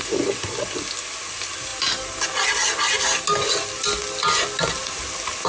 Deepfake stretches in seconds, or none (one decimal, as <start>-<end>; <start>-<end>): none